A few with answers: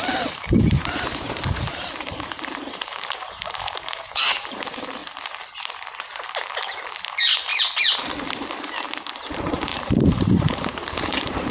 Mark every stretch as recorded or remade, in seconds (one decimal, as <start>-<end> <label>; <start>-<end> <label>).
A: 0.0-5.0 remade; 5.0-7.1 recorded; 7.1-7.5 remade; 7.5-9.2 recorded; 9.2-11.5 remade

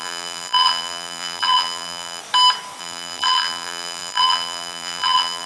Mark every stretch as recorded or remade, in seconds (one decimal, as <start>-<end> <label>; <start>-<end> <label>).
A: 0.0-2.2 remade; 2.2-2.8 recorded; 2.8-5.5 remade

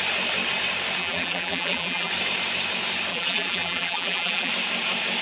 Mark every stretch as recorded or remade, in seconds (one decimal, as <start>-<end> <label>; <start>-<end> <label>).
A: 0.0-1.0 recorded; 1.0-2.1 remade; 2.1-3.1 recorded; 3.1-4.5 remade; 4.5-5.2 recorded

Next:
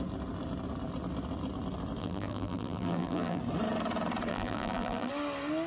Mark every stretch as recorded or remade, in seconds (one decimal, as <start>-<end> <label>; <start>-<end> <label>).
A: 0.0-2.0 recorded; 2.0-3.4 remade; 3.4-4.3 recorded; 4.3-5.1 remade; 5.1-5.7 recorded

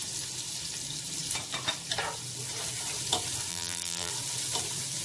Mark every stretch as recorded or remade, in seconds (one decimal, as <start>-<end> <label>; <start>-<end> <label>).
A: 0.0-3.5 recorded; 3.5-4.1 remade; 4.1-5.0 recorded

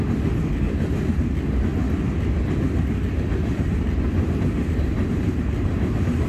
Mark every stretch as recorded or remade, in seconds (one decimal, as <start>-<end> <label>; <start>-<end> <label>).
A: 0.0-6.3 recorded

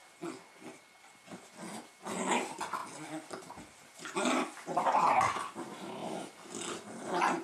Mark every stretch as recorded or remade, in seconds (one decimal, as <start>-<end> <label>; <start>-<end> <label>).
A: 0.0-2.2 recorded; 2.2-6.0 remade; 6.0-6.7 recorded; 6.7-7.4 remade